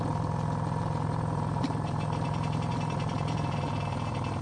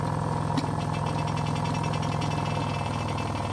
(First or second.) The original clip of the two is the second